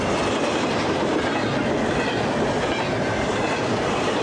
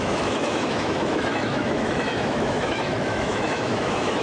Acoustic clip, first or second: first